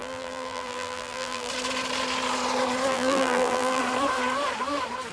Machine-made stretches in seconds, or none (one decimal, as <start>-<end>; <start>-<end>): 0.0-1.5; 2.9-3.8